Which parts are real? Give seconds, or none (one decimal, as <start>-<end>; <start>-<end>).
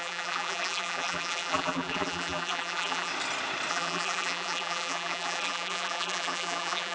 3.1-3.7